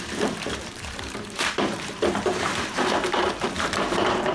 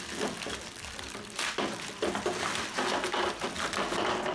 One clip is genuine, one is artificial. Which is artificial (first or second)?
first